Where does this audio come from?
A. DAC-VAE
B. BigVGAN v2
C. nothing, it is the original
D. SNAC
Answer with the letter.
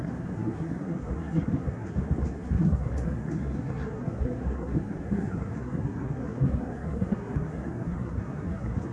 D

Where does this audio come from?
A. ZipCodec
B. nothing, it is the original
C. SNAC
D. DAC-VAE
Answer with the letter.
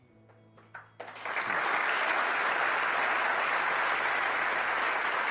B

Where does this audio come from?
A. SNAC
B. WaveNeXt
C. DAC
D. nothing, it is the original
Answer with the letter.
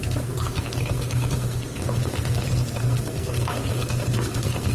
A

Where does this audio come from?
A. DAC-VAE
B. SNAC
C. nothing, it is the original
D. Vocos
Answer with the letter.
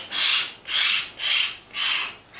C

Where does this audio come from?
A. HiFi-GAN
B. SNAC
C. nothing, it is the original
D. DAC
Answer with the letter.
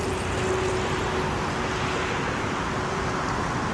C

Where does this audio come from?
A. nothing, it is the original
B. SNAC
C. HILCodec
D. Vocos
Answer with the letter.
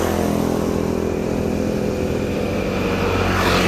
A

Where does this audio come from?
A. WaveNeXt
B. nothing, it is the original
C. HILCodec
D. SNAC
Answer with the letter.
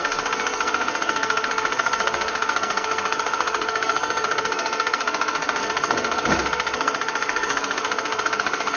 D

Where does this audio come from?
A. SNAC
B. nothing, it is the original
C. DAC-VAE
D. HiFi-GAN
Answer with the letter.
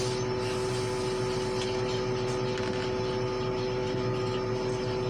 B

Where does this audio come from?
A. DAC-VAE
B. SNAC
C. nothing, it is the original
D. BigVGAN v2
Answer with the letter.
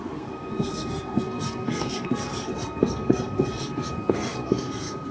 B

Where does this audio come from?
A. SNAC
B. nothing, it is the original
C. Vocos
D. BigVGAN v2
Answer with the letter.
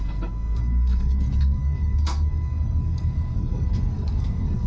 A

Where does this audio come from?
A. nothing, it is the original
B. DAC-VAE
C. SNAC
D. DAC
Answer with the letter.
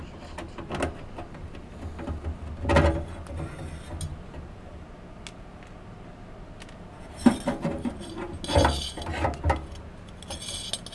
A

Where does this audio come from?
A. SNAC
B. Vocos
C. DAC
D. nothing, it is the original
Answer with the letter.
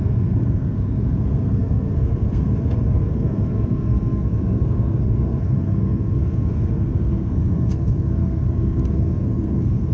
A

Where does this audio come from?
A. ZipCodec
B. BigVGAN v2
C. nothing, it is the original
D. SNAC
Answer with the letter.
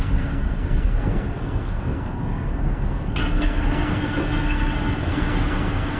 D